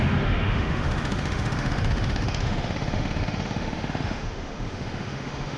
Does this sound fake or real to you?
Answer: fake